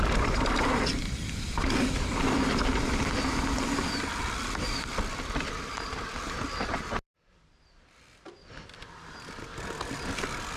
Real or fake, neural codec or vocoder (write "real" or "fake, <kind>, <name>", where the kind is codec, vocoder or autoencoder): fake, vocoder, BigVGAN v2